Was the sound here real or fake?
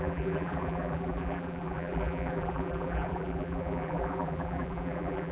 fake